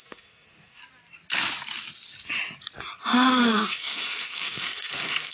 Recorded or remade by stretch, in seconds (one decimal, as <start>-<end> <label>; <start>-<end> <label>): 0.0-0.8 remade; 0.8-3.3 recorded; 3.3-5.3 remade